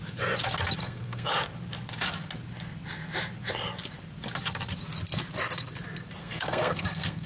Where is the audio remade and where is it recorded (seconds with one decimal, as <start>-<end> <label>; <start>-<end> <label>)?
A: 0.0-0.8 recorded; 0.8-1.3 remade; 1.3-6.2 recorded; 6.2-7.3 remade